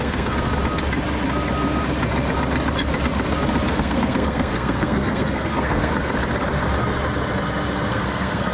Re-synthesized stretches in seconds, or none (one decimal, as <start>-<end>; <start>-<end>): 0.0-0.5; 3.7-5.9; 7.9-8.5